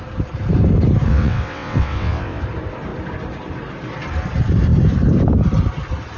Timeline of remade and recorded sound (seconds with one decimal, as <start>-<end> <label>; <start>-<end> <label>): 0.0-1.1 recorded; 1.1-2.4 remade; 2.4-6.2 recorded